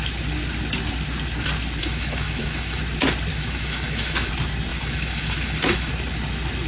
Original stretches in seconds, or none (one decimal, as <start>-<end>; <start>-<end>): 0.0-1.8; 2.8-3.3; 4.3-4.7; 5.9-6.7